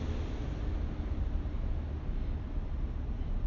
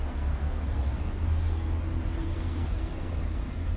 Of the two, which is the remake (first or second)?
second